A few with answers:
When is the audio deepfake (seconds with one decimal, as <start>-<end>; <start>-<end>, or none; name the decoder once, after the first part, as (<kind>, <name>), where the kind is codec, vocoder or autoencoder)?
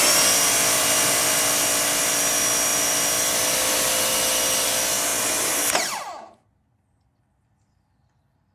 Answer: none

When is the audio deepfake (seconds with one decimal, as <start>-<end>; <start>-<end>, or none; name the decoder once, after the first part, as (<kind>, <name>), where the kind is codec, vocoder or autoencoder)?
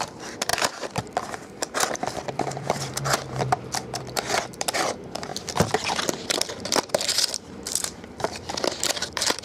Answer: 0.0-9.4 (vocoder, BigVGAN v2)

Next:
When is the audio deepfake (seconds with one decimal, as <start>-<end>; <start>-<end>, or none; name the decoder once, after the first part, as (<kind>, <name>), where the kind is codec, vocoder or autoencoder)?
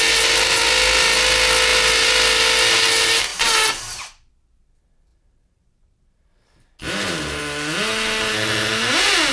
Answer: 3.3-3.8 (vocoder, BigVGAN v2); 5.1-7.4